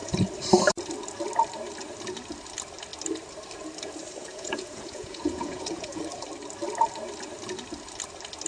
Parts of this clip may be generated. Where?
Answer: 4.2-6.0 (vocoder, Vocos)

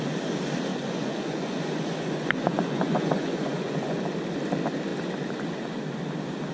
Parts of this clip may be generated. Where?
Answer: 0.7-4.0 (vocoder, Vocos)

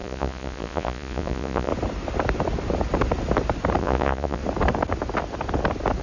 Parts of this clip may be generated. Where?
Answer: 0.0-1.7 (vocoder, Vocos); 3.8-4.4

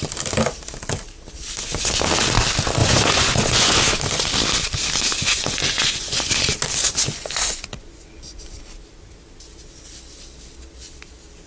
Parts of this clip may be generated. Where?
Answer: 2.8-3.8 (vocoder, Vocos); 5.1-6.4; 7.0-8.6

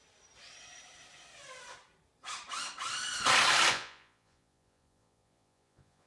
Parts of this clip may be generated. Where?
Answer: 3.7-6.1 (vocoder, Vocos)

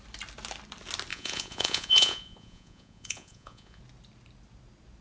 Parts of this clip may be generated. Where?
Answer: 1.1-3.8 (vocoder, Vocos)

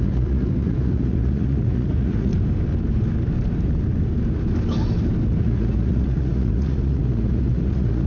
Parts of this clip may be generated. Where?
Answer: 0.0-2.3 (vocoder, Vocos); 5.4-8.1

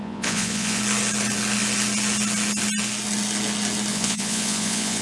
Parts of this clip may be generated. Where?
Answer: 0.0-0.8 (vocoder, Vocos); 3.9-5.0